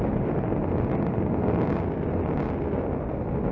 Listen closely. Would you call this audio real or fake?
real